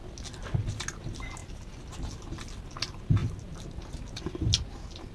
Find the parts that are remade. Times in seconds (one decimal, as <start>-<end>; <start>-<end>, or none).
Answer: none